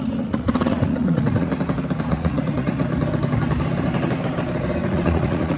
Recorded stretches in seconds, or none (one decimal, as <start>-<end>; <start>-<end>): 1.5-2.0; 2.8-4.9